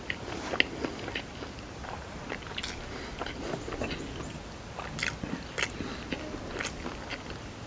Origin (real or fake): real